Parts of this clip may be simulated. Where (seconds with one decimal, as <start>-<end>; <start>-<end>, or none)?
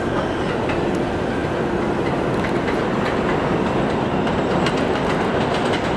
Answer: none